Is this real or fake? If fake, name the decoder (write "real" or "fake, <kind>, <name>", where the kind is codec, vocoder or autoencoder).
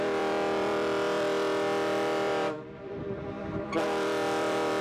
fake, vocoder, BigVGAN v2